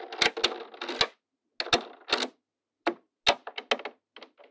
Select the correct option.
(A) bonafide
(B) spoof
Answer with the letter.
A